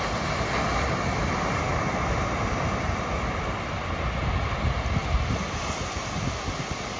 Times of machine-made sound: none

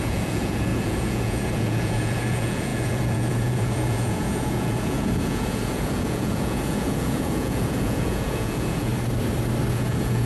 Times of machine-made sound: 0.0-8.9 (vocoder, Vocos); 9.7-10.3

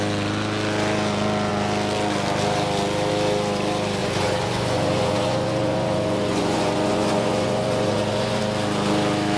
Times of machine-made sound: 4.0-8.4 (vocoder, Vocos)

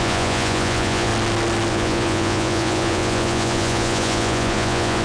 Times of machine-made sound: 0.0-1.1 (vocoder, Vocos); 1.7-5.0

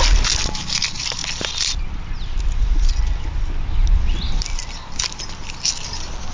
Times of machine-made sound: none

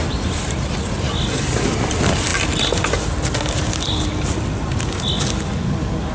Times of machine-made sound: none